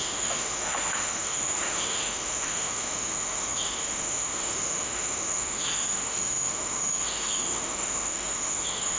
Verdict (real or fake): fake